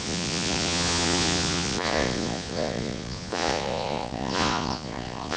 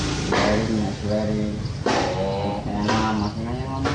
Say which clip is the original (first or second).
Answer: second